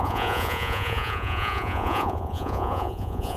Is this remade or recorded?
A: remade